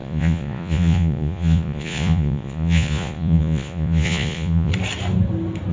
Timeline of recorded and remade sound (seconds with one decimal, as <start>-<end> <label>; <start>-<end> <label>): 0.0-4.7 remade; 4.7-5.7 recorded